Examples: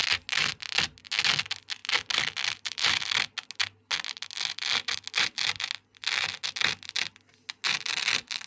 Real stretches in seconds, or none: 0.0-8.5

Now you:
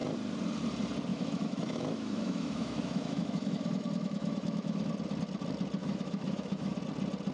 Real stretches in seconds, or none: 0.0-1.1; 4.9-5.8; 6.8-7.3

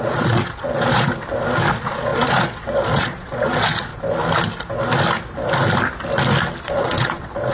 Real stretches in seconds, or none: 1.1-1.7; 3.9-6.6

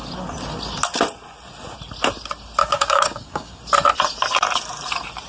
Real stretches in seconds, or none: 0.0-2.6; 3.6-5.3

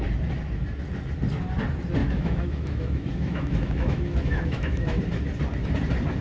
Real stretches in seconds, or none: 0.0-2.0; 5.0-6.2

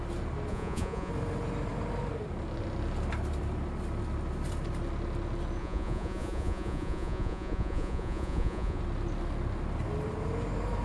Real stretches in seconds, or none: 0.0-0.5; 1.1-5.6; 8.8-10.8